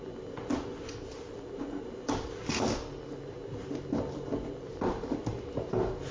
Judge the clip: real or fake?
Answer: real